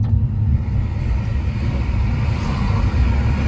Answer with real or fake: real